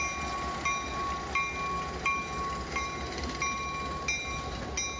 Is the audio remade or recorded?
recorded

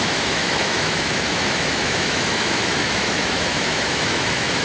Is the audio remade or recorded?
remade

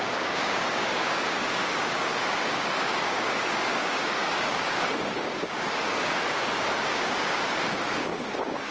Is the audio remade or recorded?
remade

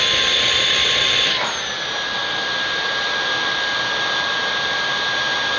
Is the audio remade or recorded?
recorded